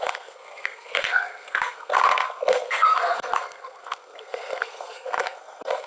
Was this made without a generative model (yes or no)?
no